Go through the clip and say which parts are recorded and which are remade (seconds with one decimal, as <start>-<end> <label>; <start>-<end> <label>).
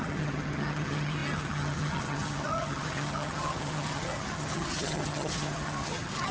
0.0-6.3 remade